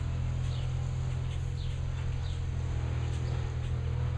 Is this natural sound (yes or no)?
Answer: yes